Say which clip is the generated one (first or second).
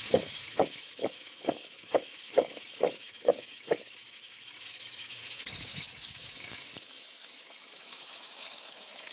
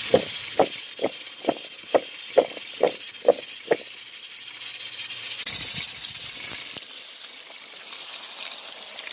first